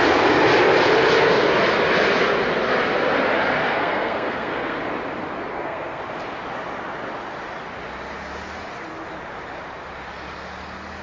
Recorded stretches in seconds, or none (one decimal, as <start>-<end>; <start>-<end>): 0.0-3.6; 4.8-5.5; 6.0-11.0